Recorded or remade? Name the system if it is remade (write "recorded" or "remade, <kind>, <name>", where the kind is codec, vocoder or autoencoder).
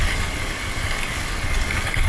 remade, codec, DAC